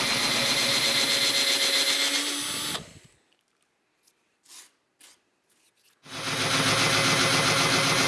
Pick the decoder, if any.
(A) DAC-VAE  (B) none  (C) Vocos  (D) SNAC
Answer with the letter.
B